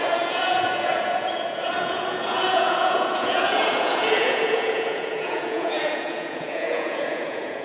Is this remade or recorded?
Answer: remade